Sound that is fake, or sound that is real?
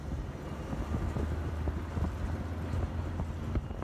real